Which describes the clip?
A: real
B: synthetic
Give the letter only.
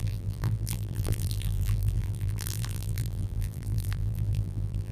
B